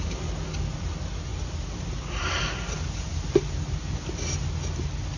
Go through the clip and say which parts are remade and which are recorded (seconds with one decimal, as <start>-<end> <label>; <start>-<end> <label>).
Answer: 0.0-5.2 recorded